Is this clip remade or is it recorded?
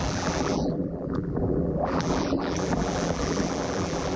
remade